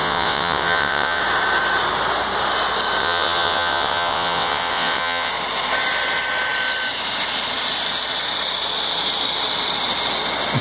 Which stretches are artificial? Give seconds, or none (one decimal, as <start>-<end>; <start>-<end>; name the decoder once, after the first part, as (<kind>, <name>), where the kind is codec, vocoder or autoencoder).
0.0-1.2 (vocoder, WaveNeXt); 3.0-5.3